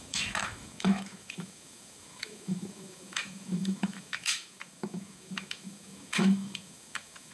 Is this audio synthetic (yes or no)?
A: yes